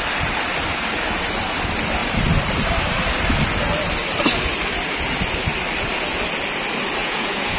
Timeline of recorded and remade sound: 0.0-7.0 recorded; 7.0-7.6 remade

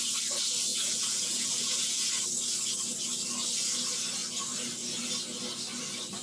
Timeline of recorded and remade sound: 0.0-0.7 recorded; 0.7-2.1 remade; 2.1-6.2 recorded

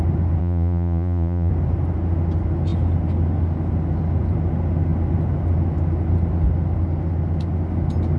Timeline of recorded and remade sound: 0.0-0.4 recorded; 0.4-1.5 remade; 1.5-8.2 recorded

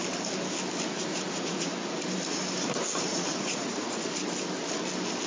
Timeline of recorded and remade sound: 0.0-1.1 recorded; 1.1-1.7 remade; 1.7-3.1 recorded; 3.1-4.0 remade; 4.0-5.3 recorded

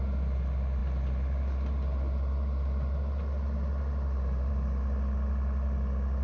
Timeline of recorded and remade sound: 0.0-6.2 recorded

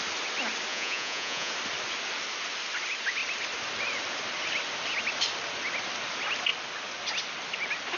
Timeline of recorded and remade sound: 0.0-0.7 recorded; 0.7-1.5 remade; 1.5-8.0 recorded

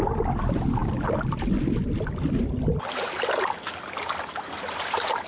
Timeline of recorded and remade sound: 0.0-5.3 recorded

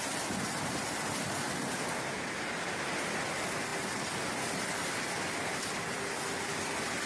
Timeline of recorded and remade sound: 0.0-7.1 recorded